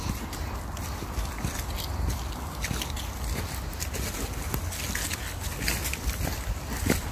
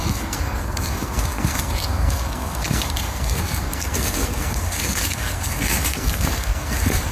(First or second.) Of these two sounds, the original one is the first